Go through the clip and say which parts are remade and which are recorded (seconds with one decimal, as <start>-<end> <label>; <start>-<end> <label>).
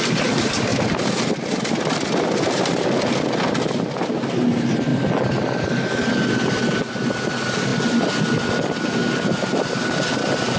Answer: 0.0-10.6 recorded